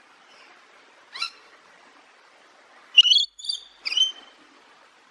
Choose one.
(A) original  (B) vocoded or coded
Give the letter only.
A